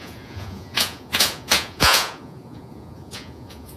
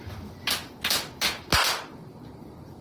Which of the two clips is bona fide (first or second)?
second